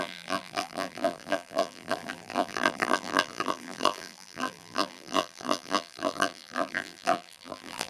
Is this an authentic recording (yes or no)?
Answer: no